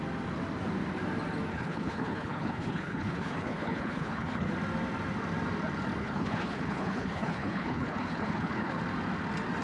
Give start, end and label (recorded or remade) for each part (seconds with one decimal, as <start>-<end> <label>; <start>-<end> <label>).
0.0-1.5 recorded; 1.5-4.5 remade; 4.5-6.0 recorded; 6.0-8.8 remade; 8.8-9.6 recorded